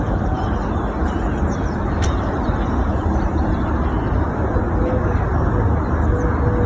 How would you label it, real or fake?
real